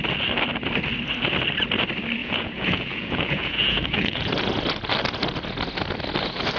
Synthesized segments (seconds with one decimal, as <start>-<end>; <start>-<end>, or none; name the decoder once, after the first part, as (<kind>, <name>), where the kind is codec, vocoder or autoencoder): 2.2-4.3 (vocoder, Vocos)